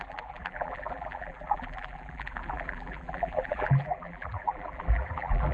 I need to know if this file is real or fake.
fake